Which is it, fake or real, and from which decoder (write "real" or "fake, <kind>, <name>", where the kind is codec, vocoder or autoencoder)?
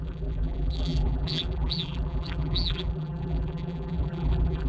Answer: fake, vocoder, BigVGAN v2